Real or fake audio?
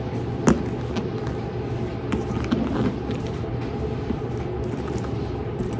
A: real